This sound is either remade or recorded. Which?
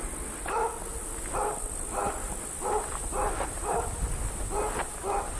recorded